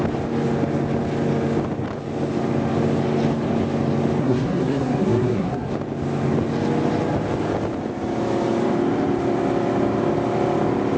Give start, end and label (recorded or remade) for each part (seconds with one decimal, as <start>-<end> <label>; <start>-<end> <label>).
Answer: 0.0-4.2 recorded; 4.2-5.7 remade; 5.7-11.0 recorded